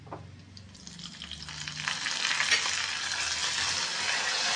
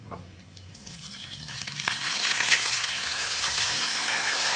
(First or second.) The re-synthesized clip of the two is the second